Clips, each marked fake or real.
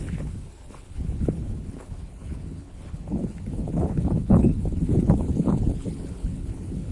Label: fake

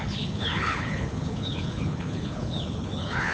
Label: fake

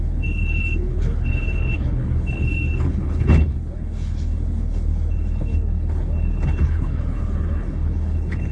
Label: fake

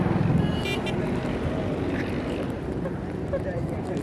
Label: real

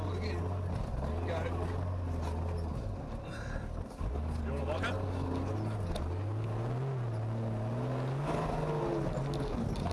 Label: real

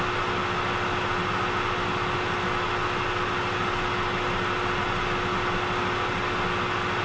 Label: real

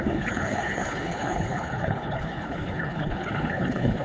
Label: fake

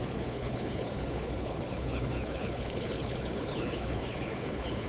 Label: fake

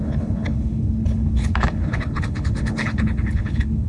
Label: fake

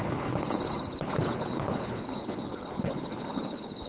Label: fake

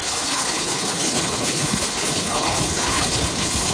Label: fake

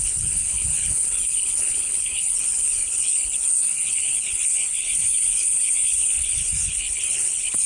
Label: fake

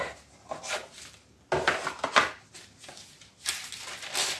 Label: real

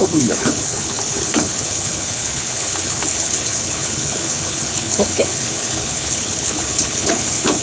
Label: fake